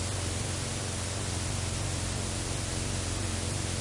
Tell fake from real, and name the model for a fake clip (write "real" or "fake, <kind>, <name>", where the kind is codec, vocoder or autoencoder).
real